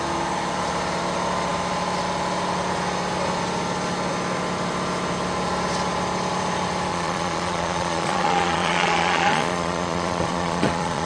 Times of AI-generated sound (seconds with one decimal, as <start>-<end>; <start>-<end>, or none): 6.9-11.1